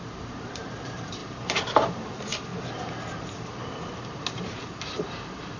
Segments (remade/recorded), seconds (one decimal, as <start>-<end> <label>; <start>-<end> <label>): 0.0-2.5 remade; 2.5-3.9 recorded; 3.9-5.6 remade